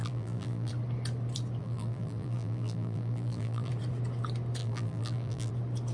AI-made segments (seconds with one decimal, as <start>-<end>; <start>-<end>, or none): 0.0-0.7; 1.6-3.7; 4.6-5.5